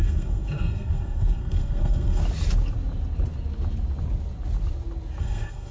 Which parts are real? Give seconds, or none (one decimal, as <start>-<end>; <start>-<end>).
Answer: 2.2-5.2